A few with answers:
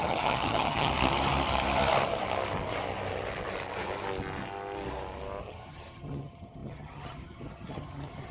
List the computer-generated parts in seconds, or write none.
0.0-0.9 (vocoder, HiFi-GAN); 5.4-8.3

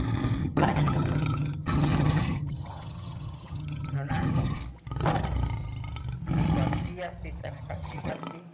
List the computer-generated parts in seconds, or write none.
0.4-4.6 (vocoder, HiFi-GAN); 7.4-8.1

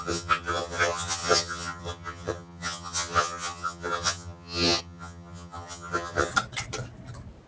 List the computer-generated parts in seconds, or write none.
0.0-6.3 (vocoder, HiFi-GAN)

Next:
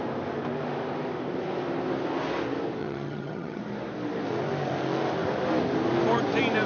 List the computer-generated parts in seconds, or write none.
2.8-3.6 (vocoder, HiFi-GAN)

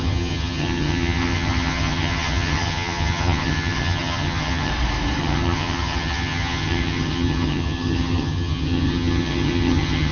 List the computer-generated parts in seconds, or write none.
0.0-4.7 (vocoder, HiFi-GAN); 5.2-10.1

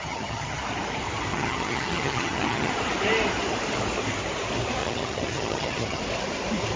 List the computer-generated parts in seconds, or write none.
0.0-0.6 (vocoder, HiFi-GAN); 1.3-2.7; 4.8-6.0

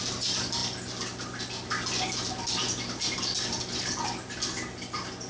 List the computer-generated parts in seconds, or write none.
none

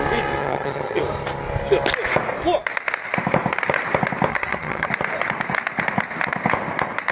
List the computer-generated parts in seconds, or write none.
0.4-1.0 (vocoder, HiFi-GAN); 4.3-4.9